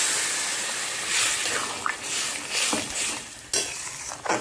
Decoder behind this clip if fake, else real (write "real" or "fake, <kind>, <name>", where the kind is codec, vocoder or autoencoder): real